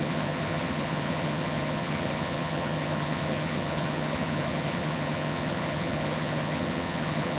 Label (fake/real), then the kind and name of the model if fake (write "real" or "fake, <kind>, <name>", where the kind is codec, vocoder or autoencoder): fake, vocoder, HiFi-GAN